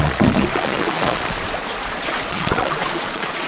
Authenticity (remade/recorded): remade